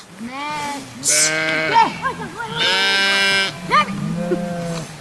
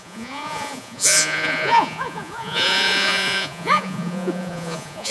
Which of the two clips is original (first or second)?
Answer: first